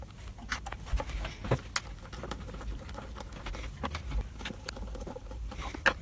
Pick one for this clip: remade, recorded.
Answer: recorded